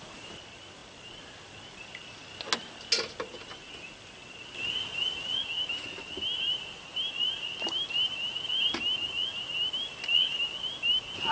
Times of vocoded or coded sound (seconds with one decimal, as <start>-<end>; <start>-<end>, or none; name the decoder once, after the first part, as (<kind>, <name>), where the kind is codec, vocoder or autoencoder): none

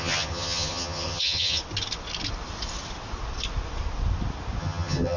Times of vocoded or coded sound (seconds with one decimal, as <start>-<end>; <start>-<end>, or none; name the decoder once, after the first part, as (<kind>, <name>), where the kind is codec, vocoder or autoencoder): 0.0-1.6 (vocoder, HiFi-GAN); 4.6-5.2

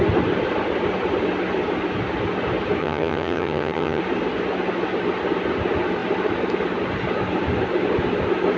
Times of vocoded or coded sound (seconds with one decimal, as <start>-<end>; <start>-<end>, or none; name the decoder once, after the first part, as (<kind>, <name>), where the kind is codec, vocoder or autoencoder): 2.8-4.0 (vocoder, HiFi-GAN)

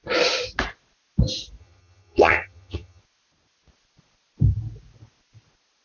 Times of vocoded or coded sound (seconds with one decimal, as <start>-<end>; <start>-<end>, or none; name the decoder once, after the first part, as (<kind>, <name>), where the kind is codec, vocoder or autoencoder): 1.6-3.0 (vocoder, HiFi-GAN)

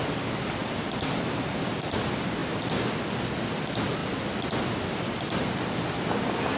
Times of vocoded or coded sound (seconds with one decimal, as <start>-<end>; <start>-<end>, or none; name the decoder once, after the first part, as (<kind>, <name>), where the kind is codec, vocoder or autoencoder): none

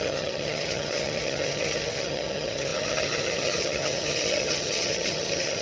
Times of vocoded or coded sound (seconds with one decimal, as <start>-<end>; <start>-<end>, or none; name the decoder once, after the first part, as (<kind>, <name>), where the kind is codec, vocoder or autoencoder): 0.0-5.6 (vocoder, HiFi-GAN)